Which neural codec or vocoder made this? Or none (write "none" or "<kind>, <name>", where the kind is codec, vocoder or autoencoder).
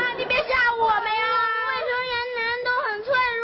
none